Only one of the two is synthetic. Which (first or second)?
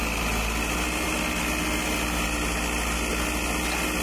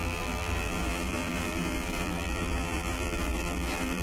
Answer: second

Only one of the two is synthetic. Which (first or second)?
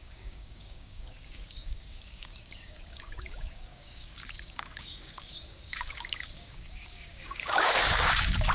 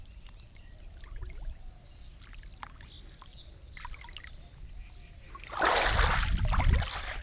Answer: first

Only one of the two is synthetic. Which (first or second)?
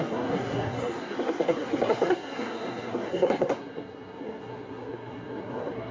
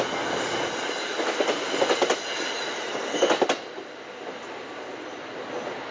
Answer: first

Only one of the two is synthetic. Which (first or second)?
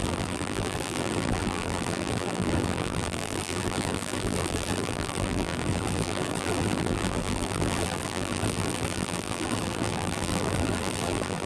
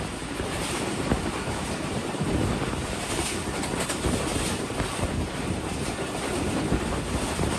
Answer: first